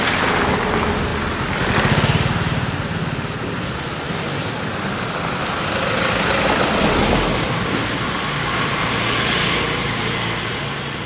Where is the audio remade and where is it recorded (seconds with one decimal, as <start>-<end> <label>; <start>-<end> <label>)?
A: 0.0-11.1 recorded